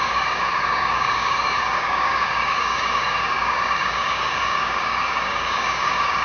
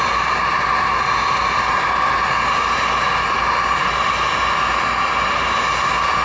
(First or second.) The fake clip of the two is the first